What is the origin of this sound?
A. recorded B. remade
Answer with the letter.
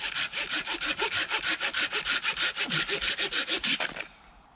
A